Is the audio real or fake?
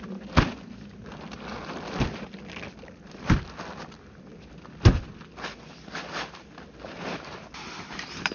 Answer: real